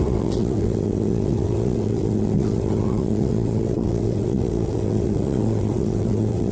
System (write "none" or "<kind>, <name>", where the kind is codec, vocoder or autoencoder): vocoder, WaveNeXt